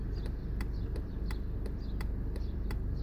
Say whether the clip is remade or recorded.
recorded